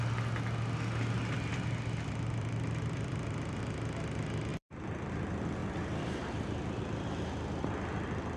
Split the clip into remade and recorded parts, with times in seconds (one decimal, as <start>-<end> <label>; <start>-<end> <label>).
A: 0.0-1.5 recorded; 1.5-3.6 remade; 3.6-4.5 recorded; 4.5-5.1 remade; 5.1-5.6 recorded; 5.6-6.8 remade; 6.8-8.4 recorded